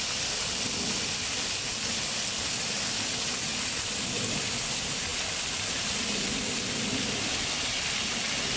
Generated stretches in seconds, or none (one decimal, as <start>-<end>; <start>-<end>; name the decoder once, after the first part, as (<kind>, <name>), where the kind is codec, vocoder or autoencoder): none